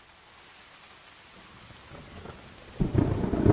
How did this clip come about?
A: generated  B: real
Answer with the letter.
B